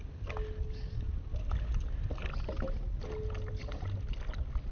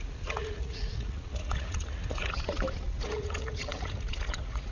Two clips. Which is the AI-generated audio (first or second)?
second